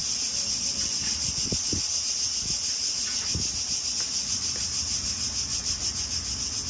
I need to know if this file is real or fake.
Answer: real